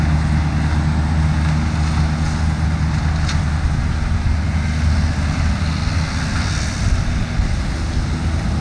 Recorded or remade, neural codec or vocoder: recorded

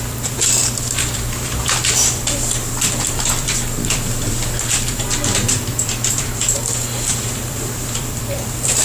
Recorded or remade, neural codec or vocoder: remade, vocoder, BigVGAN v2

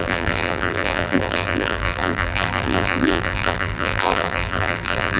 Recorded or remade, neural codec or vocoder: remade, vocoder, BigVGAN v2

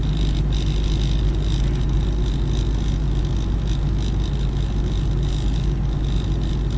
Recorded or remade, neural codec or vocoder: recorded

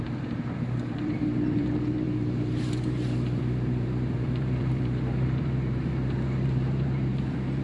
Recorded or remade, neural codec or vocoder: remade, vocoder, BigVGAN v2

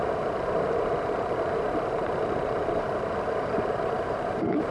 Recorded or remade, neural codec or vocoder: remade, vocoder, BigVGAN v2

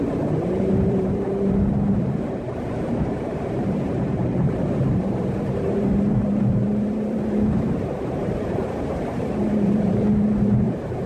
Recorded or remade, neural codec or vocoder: remade, vocoder, BigVGAN v2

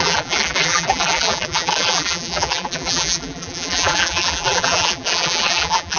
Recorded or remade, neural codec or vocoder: remade, vocoder, BigVGAN v2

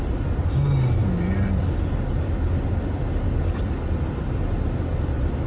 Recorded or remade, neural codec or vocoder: recorded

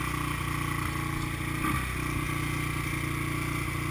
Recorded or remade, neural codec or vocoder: recorded